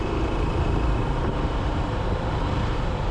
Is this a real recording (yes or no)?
no